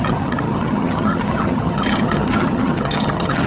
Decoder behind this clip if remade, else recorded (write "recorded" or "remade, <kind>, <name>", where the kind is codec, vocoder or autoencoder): remade, vocoder, HiFi-GAN